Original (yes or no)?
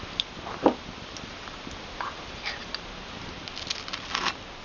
yes